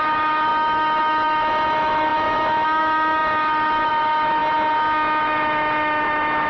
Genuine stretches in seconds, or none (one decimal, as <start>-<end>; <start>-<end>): 4.4-5.2